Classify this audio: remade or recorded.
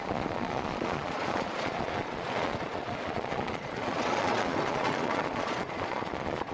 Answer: remade